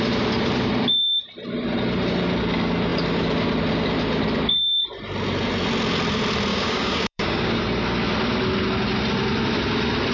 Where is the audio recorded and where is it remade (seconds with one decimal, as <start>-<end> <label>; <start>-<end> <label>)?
0.0-6.5 recorded; 6.5-7.6 remade; 7.6-10.1 recorded